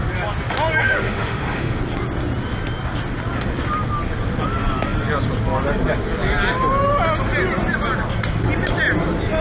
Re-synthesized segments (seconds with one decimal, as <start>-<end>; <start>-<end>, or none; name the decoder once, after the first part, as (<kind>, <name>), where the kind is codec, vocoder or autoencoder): 0.8-1.8 (autoencoder, DAC-VAE)